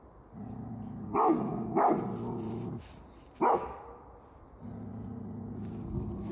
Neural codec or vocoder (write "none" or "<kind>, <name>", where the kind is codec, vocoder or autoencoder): none